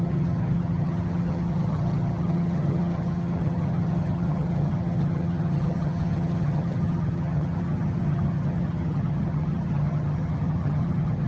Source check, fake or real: fake